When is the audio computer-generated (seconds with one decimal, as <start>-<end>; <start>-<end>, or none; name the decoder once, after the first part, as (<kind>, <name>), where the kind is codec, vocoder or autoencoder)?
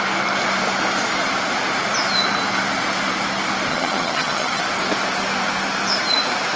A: 3.7-4.6 (vocoder, HiFi-GAN)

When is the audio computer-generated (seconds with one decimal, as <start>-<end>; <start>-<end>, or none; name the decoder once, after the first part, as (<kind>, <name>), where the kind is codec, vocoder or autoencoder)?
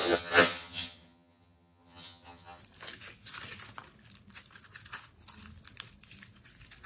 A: 0.0-2.6 (vocoder, HiFi-GAN)